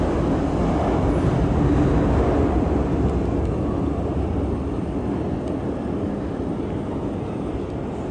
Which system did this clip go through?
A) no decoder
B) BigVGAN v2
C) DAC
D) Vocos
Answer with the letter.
A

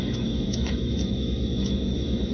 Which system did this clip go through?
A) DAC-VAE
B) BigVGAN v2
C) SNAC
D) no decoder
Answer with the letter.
A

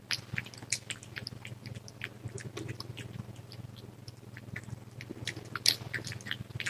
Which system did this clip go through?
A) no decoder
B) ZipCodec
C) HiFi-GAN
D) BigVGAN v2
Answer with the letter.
A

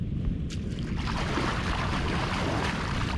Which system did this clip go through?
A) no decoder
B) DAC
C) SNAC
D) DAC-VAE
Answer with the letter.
A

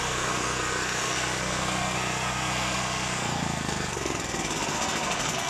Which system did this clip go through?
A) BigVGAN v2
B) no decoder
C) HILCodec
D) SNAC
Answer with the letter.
D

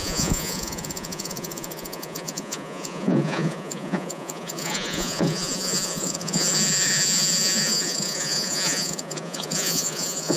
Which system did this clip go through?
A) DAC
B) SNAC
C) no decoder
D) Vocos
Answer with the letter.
D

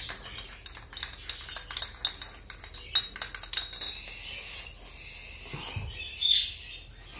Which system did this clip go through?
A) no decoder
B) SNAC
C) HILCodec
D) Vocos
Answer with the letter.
A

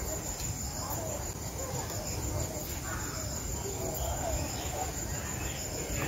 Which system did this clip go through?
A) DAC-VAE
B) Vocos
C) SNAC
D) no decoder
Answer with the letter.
D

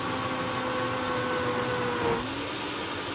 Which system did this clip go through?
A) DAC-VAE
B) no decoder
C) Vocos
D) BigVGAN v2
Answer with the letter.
B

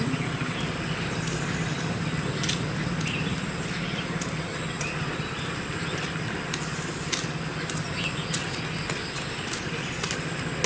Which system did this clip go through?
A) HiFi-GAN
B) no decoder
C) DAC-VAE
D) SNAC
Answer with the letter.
B